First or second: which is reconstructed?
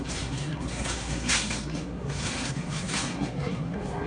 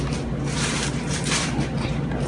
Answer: first